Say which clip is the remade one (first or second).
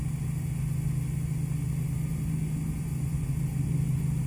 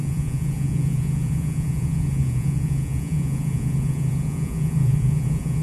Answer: second